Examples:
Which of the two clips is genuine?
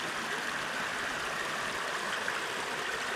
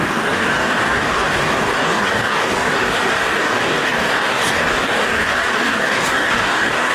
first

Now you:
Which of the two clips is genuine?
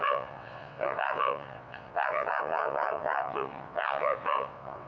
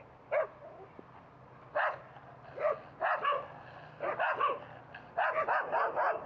second